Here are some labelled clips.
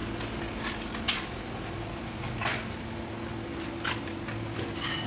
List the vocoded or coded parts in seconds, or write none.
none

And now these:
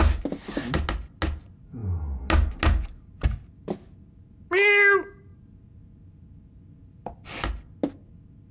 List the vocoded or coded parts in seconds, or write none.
none

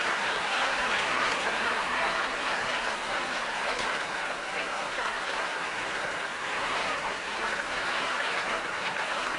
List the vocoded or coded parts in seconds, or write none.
0.0-9.4 (codec, SNAC)

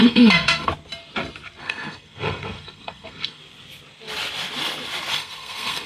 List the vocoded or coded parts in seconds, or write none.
0.0-0.7 (codec, SNAC); 1.6-3.4; 5.1-5.9

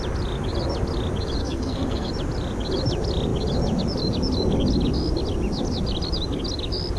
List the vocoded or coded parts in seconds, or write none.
1.4-2.1 (codec, SNAC)

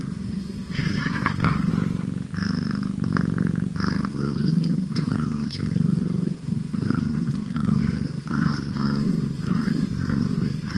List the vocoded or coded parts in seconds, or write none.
0.0-1.7 (codec, SNAC); 4.1-10.8